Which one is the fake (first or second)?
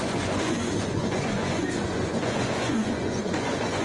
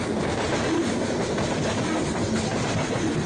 first